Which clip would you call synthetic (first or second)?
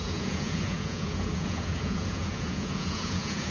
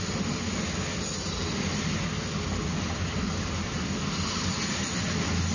first